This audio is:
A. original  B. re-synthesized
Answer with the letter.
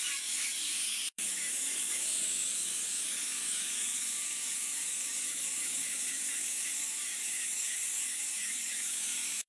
B